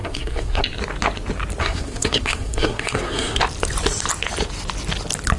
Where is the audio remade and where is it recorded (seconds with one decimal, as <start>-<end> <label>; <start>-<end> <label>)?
0.0-0.6 remade; 0.6-1.6 recorded; 1.6-3.4 remade; 3.4-5.4 recorded